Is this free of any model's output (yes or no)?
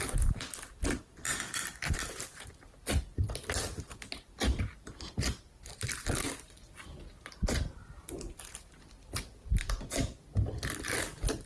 yes